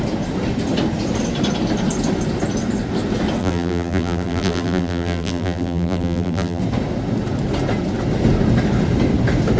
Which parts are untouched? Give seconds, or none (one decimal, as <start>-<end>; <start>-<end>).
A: 0.0-3.4; 6.6-9.6